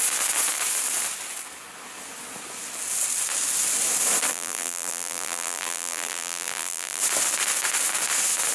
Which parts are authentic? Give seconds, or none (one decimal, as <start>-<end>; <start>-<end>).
0.0-4.3; 7.0-8.5